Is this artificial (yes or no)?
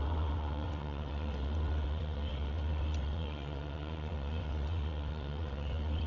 yes